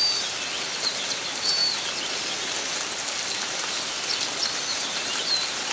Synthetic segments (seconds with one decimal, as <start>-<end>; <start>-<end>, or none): none